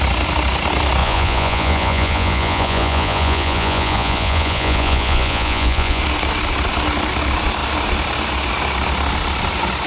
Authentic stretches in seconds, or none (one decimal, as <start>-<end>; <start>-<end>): 0.0-1.0; 6.0-9.9